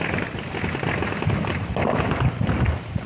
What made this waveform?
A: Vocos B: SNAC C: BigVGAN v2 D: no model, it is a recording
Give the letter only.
D